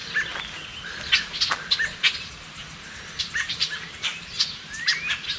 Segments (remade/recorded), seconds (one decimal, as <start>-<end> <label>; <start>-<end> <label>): 0.0-3.2 recorded; 3.2-5.4 remade